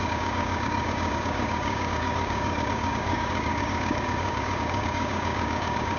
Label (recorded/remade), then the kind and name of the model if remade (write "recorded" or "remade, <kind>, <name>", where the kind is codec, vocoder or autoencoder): remade, codec, DAC